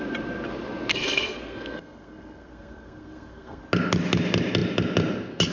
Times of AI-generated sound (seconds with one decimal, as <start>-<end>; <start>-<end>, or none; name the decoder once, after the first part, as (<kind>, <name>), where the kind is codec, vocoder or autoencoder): 0.9-3.6 (codec, SNAC)